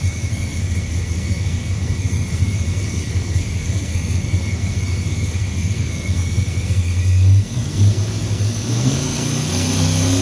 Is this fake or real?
fake